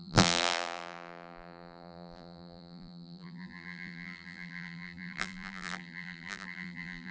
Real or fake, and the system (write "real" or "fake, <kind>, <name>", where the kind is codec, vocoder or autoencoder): fake, vocoder, BigVGAN v2